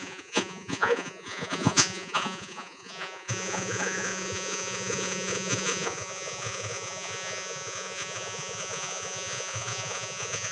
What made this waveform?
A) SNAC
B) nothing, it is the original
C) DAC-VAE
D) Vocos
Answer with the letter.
D